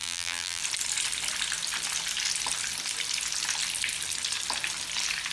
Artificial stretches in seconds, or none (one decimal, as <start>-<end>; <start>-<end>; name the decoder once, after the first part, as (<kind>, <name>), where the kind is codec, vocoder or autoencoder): 0.0-0.6 (vocoder, BigVGAN v2)